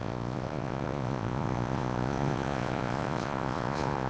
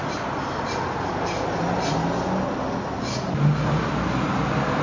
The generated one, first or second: first